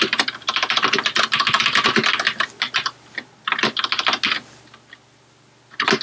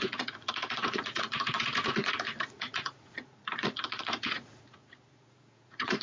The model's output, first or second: second